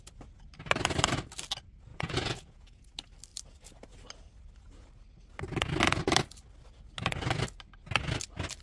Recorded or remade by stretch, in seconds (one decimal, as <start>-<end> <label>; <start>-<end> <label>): 0.0-1.9 recorded; 1.9-2.9 remade; 2.9-8.6 recorded